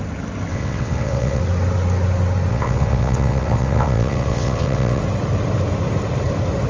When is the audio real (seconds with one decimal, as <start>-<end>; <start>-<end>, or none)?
0.0-0.5; 1.4-2.5; 5.0-6.7